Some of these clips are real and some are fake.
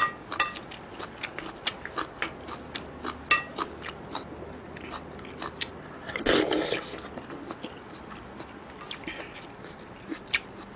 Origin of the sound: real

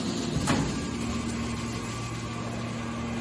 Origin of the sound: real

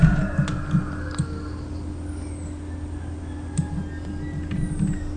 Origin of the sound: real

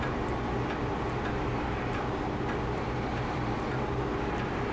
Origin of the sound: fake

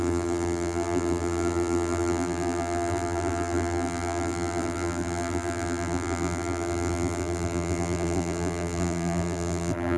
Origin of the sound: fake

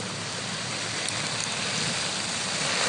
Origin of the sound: fake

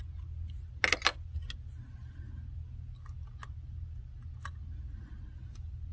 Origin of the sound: real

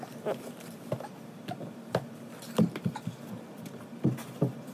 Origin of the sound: real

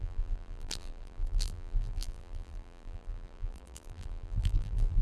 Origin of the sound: fake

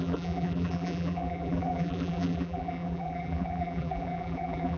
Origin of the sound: fake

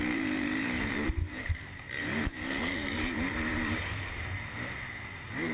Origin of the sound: fake